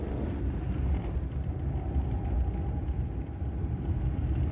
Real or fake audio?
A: real